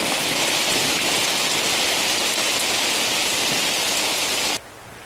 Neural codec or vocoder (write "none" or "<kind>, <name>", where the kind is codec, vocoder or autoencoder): none